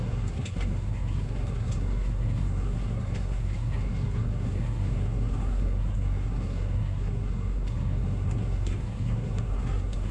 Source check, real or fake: fake